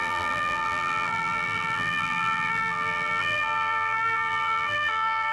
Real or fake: fake